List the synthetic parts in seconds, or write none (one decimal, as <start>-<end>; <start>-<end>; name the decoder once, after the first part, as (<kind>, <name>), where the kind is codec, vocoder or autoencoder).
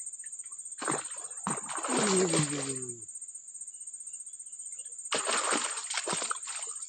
none